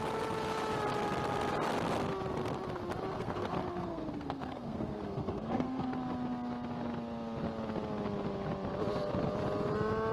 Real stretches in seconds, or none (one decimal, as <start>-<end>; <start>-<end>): 0.0-3.1; 5.9-10.1